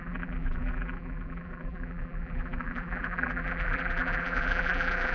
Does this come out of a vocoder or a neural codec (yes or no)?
yes